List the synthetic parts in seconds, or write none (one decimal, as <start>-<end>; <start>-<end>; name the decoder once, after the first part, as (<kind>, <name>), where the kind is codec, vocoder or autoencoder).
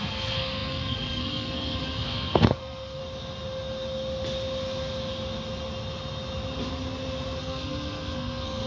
0.0-3.0 (codec, SNAC); 7.4-8.7